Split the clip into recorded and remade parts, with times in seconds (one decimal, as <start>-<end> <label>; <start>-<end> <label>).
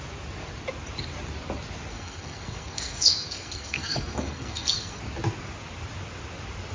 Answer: 0.0-1.9 recorded; 1.9-5.0 remade; 5.0-6.7 recorded